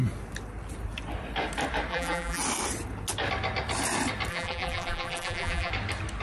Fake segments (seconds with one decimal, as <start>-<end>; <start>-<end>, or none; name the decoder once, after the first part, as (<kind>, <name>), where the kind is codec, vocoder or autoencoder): 1.9-2.4 (vocoder, BigVGAN v2); 4.3-5.7